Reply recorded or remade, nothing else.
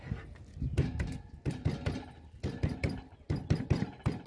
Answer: recorded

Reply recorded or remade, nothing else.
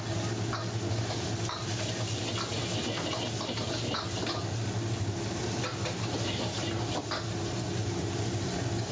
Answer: recorded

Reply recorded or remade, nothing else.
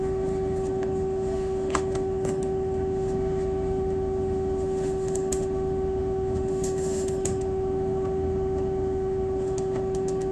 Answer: remade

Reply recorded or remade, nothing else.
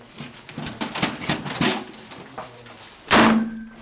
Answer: recorded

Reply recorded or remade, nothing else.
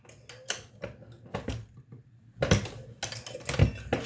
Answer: recorded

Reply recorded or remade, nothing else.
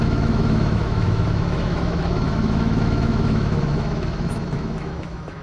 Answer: remade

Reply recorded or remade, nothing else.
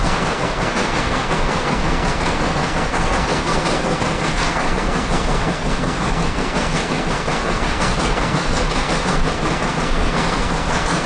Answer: remade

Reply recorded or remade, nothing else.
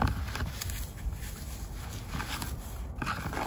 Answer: recorded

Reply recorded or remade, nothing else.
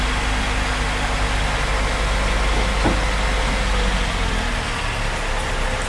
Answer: recorded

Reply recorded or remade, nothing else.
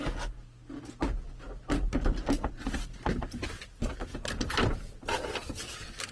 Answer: recorded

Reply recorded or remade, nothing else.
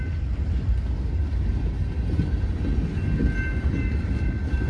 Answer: recorded